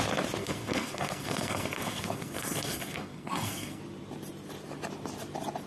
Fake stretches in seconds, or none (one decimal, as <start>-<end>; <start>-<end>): 0.4-3.8